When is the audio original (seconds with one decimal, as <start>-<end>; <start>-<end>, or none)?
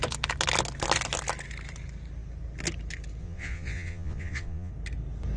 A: 0.0-3.2; 4.7-5.4